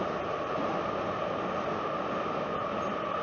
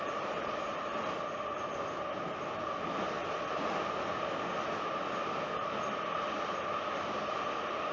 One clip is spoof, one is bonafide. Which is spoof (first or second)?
first